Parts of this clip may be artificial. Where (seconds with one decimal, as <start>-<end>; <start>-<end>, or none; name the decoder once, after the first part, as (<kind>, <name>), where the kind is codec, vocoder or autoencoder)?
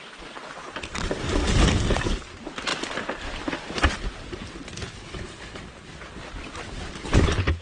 5.0-5.6 (codec, HILCodec)